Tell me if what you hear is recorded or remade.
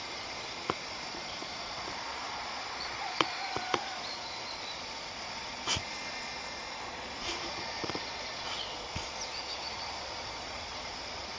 remade